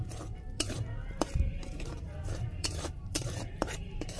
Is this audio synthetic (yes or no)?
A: yes